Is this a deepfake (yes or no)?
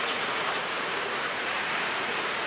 yes